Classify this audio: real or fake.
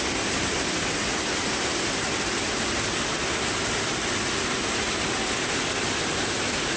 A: real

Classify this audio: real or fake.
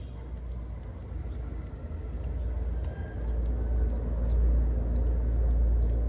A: real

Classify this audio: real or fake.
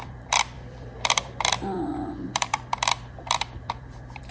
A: fake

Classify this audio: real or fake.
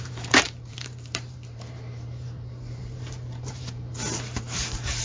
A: fake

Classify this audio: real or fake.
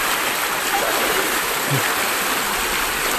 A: real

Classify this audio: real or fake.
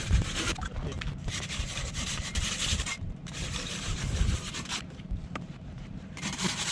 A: fake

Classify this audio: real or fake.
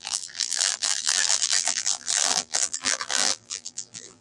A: fake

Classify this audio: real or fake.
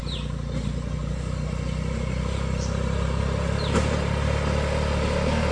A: real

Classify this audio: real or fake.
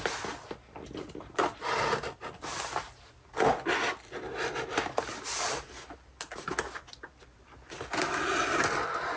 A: real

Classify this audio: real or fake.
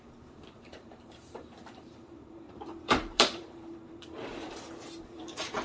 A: fake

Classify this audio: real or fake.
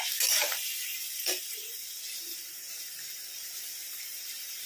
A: fake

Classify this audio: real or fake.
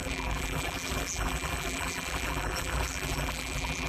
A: fake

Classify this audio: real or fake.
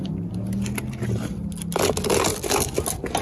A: real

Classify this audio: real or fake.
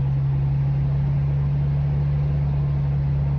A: real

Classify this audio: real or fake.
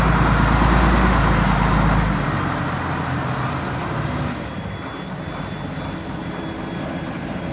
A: real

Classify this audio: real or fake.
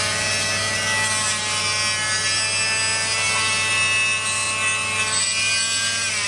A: real